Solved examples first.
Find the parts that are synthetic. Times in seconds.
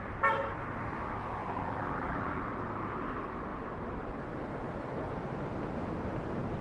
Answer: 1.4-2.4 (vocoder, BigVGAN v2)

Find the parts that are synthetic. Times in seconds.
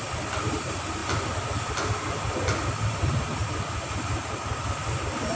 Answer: none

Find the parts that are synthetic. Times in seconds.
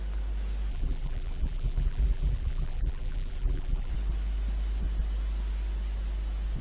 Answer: 0.7-3.9 (vocoder, BigVGAN v2)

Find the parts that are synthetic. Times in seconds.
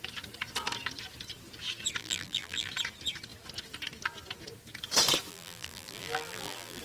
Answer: 2.0-2.7 (vocoder, BigVGAN v2); 5.3-6.8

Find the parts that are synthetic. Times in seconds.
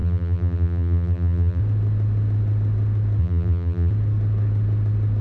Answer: 0.0-1.6 (vocoder, BigVGAN v2); 3.2-3.9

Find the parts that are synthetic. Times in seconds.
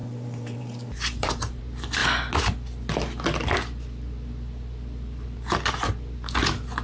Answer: 0.0-1.6 (vocoder, BigVGAN v2)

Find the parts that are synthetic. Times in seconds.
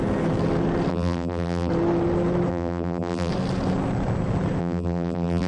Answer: 0.9-1.7 (vocoder, BigVGAN v2); 2.5-3.3; 4.6-5.5